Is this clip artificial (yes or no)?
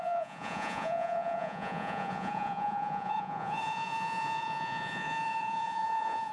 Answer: yes